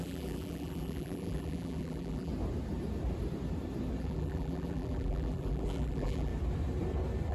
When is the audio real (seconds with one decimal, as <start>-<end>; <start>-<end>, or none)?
2.3-4.0; 6.3-7.3